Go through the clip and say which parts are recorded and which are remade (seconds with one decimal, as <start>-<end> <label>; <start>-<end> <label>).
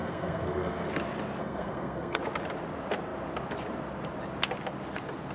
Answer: 0.0-0.9 remade; 0.9-1.4 recorded; 1.4-2.2 remade; 2.2-5.3 recorded